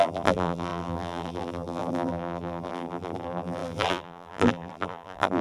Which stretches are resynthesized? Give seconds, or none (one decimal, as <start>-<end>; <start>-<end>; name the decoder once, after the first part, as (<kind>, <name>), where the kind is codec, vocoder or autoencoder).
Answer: 0.0-5.4 (vocoder, BigVGAN v2)